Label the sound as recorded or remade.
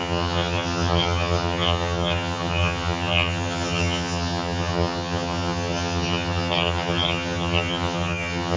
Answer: remade